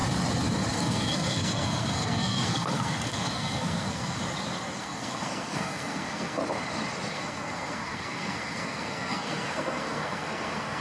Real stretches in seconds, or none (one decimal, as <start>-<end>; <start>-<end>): 0.0-0.7; 4.2-4.8; 6.4-7.1